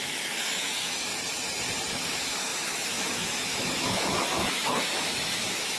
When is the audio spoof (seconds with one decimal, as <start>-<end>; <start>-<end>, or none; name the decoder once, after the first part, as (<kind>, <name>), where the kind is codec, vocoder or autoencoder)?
0.0-1.1 (autoencoder, DAC-VAE); 1.9-5.8